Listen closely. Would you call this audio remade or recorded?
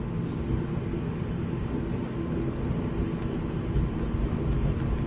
recorded